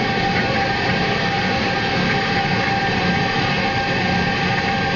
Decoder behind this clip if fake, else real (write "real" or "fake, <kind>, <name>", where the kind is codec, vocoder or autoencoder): real